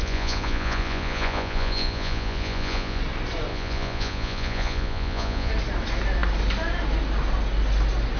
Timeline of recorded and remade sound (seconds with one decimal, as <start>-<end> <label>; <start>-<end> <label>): 0.0-3.0 remade; 3.0-3.5 recorded; 3.5-5.5 remade; 5.5-8.2 recorded